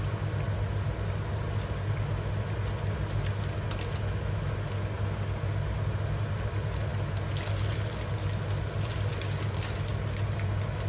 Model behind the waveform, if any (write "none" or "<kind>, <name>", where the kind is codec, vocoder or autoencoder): none